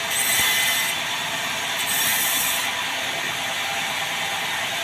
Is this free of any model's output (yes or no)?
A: yes